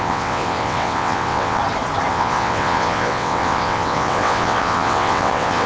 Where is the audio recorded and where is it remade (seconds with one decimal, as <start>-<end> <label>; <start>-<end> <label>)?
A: 0.0-1.6 remade; 1.6-2.1 recorded; 2.1-5.7 remade